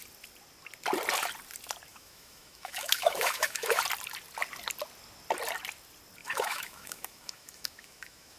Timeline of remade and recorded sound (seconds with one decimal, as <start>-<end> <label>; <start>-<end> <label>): 0.0-1.9 recorded; 1.9-3.8 remade; 3.8-6.2 recorded; 6.2-8.4 remade